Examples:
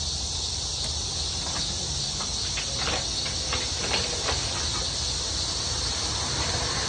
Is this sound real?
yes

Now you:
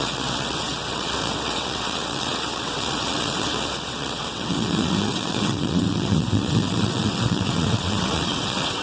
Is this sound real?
no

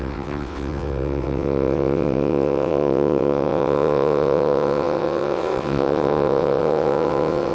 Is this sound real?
no